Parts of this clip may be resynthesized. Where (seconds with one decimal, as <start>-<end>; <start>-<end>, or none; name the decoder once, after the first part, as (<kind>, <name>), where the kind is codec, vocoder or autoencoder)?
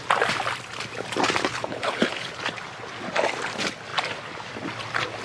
1.5-2.3 (codec, HILCodec)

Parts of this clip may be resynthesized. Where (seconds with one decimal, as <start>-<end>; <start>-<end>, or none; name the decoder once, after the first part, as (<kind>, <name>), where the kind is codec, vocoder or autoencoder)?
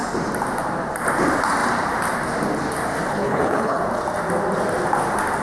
3.1-3.8 (codec, HILCodec)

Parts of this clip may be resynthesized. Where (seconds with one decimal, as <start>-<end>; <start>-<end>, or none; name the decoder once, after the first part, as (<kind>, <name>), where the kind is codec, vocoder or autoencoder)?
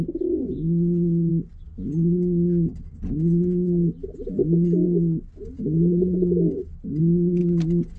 none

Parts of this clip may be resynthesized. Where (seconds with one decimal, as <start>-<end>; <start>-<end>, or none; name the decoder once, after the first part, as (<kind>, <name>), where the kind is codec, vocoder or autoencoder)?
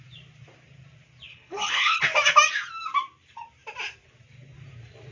1.3-2.0 (codec, HILCodec)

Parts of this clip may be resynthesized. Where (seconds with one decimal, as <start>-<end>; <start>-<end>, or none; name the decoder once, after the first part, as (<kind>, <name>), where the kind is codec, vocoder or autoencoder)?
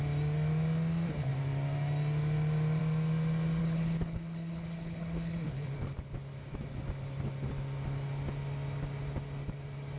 3.6-5.9 (codec, HILCodec)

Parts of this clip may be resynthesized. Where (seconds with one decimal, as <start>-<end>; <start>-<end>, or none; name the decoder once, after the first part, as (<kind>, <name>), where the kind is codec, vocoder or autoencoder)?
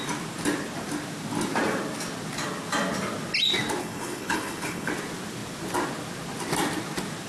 3.8-4.9 (codec, HILCodec)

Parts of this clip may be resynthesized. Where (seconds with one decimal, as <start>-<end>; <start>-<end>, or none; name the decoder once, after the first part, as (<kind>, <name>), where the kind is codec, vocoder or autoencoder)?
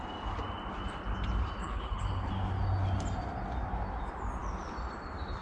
1.6-2.3 (codec, HILCodec)